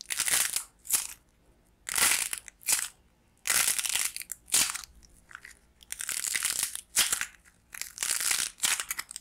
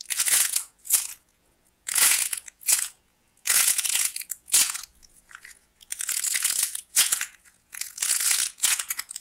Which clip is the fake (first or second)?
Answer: second